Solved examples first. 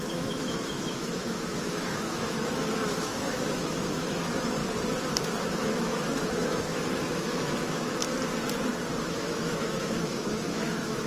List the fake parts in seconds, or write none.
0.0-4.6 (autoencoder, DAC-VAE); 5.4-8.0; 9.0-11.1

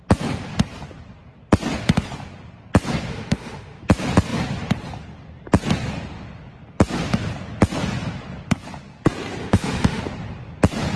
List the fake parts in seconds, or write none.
3.1-3.8 (autoencoder, DAC-VAE); 9.4-10.0

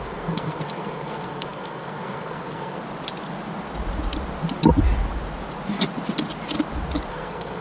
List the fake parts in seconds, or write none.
0.0-2.8 (codec, SNAC); 7.1-7.6

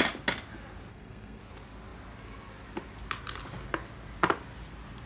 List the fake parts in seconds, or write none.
0.9-1.4 (codec, SNAC)

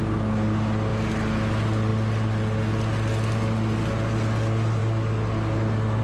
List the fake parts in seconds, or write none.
none

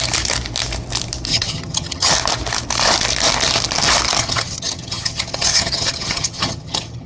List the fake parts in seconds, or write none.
1.3-2.1 (vocoder, HiFi-GAN); 4.2-7.1

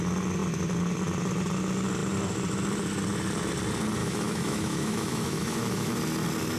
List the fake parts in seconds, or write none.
4.0-6.0 (autoencoder, DAC-VAE)